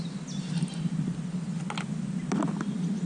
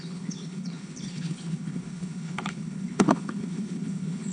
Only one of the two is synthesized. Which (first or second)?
second